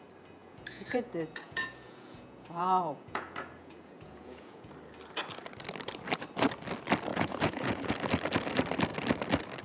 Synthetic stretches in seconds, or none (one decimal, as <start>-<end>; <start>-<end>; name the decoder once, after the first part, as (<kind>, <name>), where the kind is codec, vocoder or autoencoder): 0.4-4.7 (vocoder, Vocos); 7.1-7.9